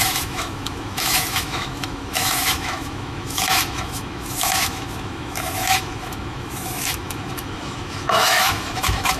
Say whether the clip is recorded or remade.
remade